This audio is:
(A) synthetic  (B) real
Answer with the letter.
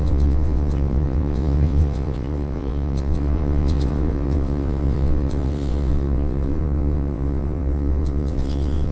A